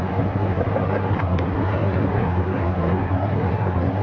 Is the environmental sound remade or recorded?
remade